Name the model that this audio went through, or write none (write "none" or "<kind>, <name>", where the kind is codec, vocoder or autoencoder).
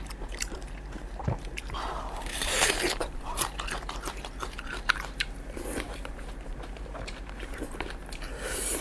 vocoder, BigVGAN v2